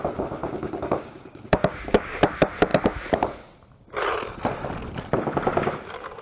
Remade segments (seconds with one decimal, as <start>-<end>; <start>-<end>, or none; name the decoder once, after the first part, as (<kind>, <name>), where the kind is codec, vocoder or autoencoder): 0.4-2.2 (codec, DAC)